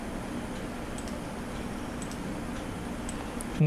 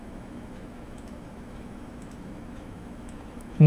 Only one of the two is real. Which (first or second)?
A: first